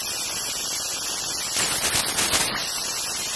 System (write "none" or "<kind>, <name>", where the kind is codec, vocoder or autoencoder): none